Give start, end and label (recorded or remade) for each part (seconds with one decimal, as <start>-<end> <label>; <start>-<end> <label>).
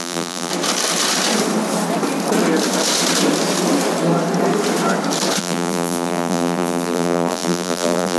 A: 0.0-0.5 remade; 0.5-5.4 recorded; 5.4-8.2 remade